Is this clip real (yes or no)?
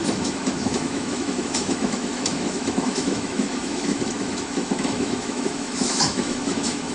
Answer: no